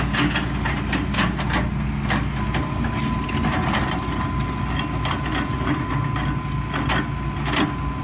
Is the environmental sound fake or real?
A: real